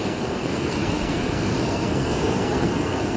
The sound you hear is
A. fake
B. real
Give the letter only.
A